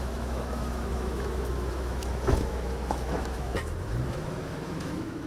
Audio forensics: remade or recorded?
remade